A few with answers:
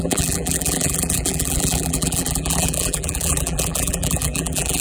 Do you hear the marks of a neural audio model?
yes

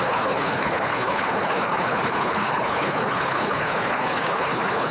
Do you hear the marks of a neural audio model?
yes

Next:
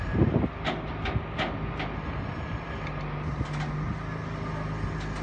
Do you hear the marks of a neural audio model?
no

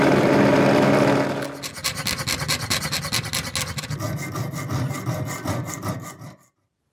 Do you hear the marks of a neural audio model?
no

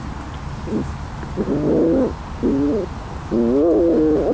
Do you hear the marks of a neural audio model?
no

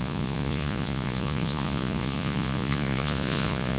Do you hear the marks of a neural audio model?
yes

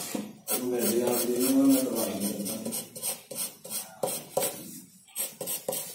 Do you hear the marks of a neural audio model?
no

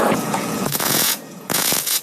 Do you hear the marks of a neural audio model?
yes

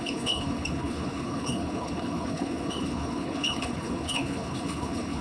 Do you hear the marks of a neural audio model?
yes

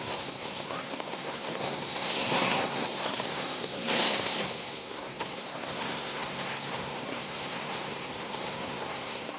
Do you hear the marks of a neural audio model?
yes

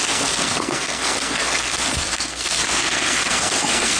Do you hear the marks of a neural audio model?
yes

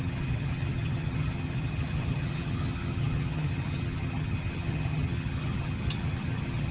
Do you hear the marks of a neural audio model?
yes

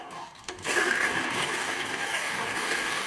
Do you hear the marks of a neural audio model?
yes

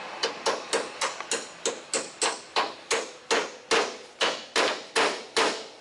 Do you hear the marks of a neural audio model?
no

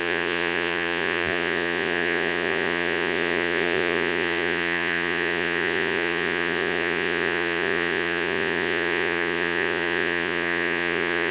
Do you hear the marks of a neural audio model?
yes